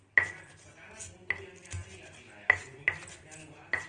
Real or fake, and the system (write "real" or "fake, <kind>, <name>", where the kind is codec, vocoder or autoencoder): real